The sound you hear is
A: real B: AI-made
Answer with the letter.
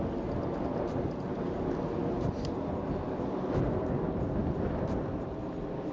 A